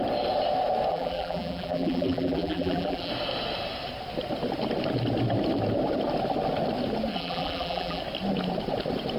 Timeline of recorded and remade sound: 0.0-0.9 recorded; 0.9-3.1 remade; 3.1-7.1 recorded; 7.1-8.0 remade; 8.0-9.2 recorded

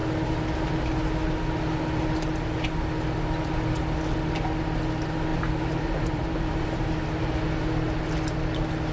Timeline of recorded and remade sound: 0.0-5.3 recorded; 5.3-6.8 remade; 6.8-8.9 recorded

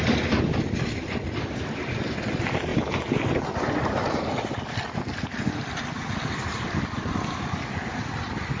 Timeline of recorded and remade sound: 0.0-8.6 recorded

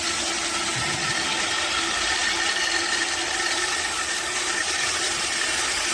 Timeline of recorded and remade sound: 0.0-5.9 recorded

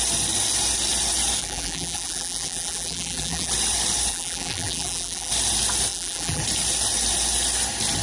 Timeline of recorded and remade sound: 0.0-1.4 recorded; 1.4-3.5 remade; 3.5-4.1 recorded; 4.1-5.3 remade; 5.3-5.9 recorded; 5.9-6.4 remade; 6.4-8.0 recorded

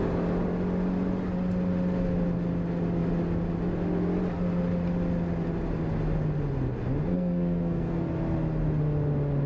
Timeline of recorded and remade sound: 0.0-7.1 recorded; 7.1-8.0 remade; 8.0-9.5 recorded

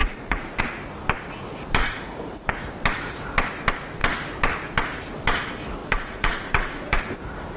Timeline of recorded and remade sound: 0.0-0.6 remade; 0.6-1.8 recorded; 1.8-2.5 remade; 2.5-5.8 recorded; 5.8-7.0 remade; 7.0-7.6 recorded